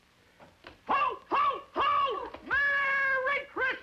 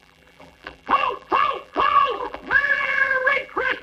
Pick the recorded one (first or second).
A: first